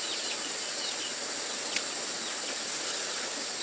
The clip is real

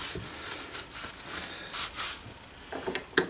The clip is real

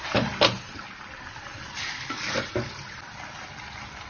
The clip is real